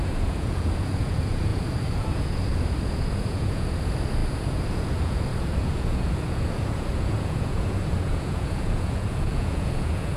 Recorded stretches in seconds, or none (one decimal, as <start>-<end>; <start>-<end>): none